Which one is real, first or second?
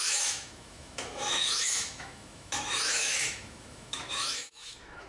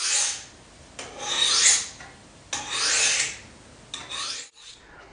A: second